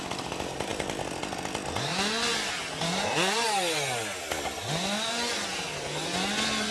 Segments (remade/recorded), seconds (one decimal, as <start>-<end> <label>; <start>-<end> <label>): 0.0-6.7 recorded